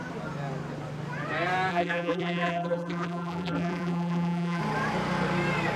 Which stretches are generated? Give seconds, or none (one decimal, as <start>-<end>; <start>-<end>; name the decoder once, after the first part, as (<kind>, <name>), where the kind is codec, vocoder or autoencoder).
1.7-4.6 (vocoder, BigVGAN v2)